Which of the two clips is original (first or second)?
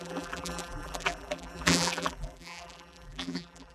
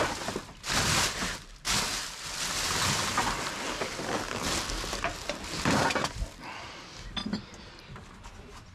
second